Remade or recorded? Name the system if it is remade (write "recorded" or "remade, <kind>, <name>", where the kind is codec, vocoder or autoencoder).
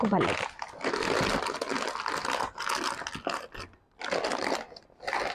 recorded